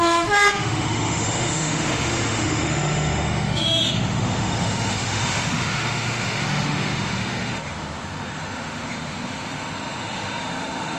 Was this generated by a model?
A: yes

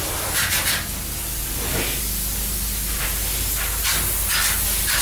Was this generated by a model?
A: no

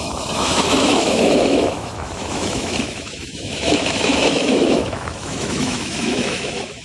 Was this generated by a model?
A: yes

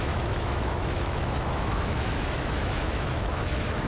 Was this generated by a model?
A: yes